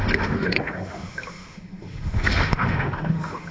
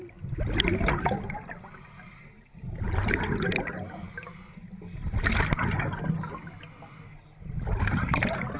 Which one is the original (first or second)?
second